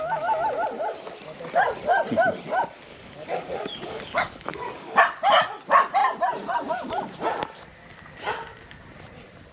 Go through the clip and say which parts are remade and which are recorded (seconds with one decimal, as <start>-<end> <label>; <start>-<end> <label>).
0.0-2.9 recorded; 2.9-5.0 remade; 5.0-9.5 recorded